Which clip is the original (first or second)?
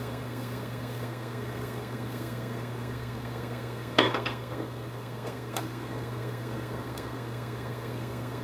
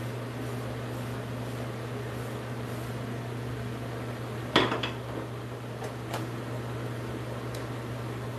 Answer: second